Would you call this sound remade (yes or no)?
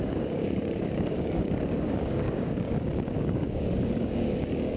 yes